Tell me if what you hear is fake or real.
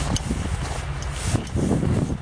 real